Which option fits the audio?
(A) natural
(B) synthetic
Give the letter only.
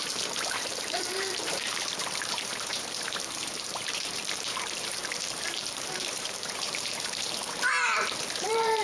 B